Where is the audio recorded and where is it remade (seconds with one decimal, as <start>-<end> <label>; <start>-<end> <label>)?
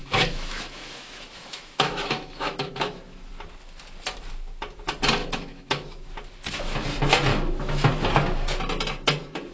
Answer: 0.0-3.3 remade; 3.3-5.2 recorded; 5.2-6.1 remade; 6.1-7.3 recorded; 7.3-7.9 remade; 7.9-9.5 recorded